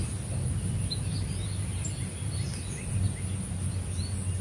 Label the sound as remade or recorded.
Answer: recorded